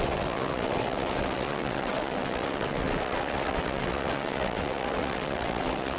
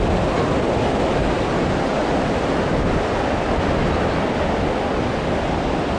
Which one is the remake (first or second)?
first